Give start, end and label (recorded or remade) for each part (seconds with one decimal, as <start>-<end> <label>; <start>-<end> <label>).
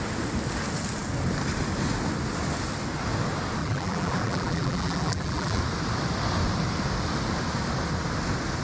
0.0-3.6 recorded; 3.6-5.6 remade; 5.6-8.6 recorded